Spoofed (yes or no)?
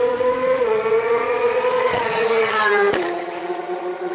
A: yes